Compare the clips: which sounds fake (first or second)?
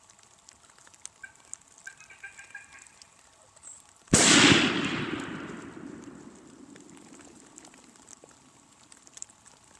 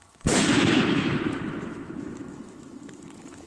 second